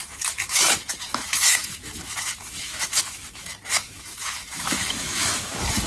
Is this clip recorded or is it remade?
remade